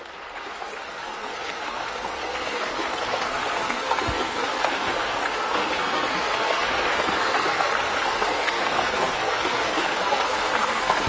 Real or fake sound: fake